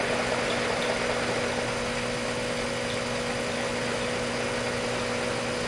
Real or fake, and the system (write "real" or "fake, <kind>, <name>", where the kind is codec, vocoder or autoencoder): real